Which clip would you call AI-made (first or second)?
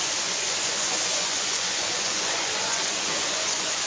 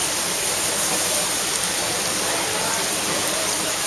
first